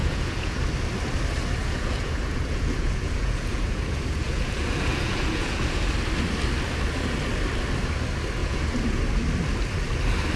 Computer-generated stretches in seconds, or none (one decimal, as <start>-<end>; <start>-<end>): 0.0-0.6; 1.6-5.8; 8.4-9.0